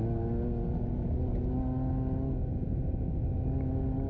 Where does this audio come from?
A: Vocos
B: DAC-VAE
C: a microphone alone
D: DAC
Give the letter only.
C